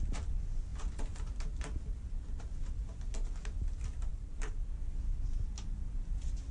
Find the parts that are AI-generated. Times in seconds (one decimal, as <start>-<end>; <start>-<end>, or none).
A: 4.1-4.7

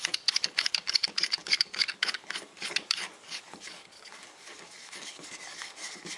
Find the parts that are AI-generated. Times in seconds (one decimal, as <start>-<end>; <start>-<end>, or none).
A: 0.0-6.2

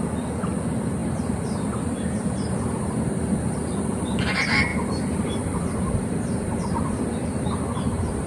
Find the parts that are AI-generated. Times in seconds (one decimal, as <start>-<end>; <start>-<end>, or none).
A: 1.0-4.2; 4.7-7.6

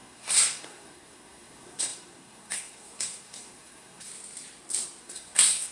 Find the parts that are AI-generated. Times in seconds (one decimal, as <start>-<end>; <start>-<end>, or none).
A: 0.0-4.1; 5.0-5.7

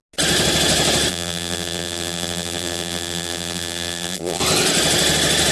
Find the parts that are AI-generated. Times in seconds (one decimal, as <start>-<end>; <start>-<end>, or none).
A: 1.1-4.4

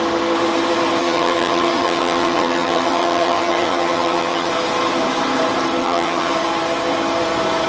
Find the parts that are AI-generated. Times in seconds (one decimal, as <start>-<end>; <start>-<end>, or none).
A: 1.0-4.5; 5.8-6.3